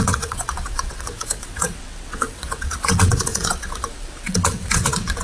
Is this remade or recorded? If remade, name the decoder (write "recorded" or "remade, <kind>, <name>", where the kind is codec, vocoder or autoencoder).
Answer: remade, vocoder, WaveNeXt